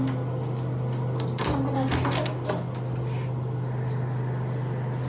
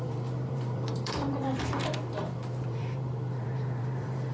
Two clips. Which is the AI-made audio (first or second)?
second